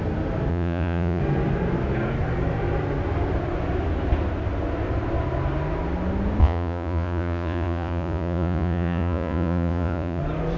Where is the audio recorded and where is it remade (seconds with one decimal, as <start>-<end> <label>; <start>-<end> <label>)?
0.0-0.5 recorded; 0.5-1.2 remade; 1.2-6.4 recorded; 6.4-10.2 remade; 10.2-10.6 recorded